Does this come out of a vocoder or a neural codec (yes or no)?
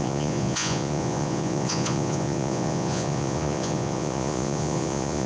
yes